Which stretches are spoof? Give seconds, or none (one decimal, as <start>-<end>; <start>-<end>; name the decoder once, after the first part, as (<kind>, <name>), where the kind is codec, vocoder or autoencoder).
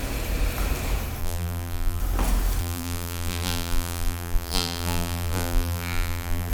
1.2-2.0 (vocoder, BigVGAN v2); 2.6-6.5